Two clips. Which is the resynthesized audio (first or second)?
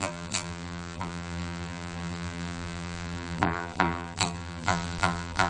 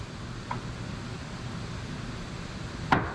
first